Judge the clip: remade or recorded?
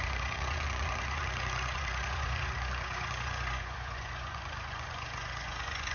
remade